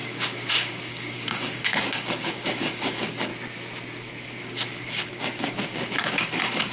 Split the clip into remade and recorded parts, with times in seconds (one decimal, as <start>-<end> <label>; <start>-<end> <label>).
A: 0.0-3.3 remade; 3.3-4.4 recorded; 4.4-6.7 remade